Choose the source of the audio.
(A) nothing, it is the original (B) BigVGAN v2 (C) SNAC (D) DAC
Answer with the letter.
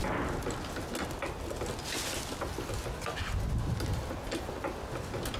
A